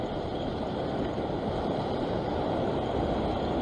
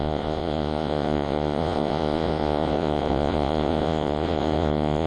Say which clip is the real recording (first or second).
first